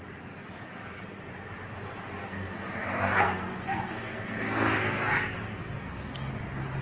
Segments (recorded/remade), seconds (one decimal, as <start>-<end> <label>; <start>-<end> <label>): 0.0-2.2 recorded; 2.2-6.3 remade; 6.3-6.8 recorded